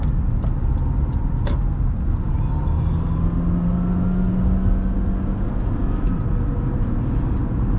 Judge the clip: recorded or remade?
recorded